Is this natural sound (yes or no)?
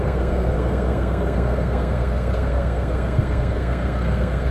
no